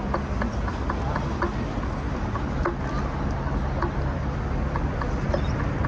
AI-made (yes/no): no